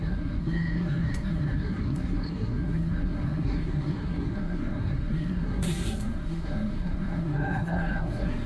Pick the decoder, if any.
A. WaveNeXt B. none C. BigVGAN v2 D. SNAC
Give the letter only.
D